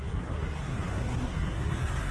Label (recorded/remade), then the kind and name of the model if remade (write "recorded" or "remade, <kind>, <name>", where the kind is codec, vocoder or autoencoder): remade, codec, SNAC